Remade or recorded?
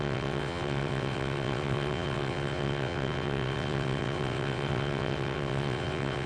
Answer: remade